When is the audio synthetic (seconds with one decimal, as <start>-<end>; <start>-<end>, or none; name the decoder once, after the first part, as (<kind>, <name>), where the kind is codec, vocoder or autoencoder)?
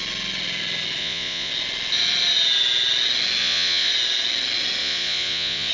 1.0-1.5 (vocoder, Vocos); 3.4-3.9; 4.8-5.7